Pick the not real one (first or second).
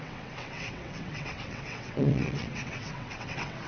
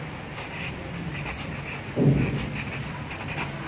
first